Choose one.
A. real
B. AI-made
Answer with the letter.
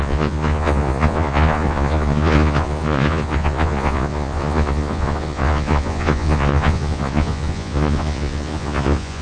B